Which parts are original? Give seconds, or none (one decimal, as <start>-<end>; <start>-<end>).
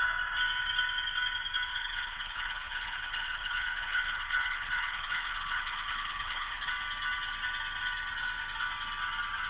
0.0-1.7; 6.7-9.5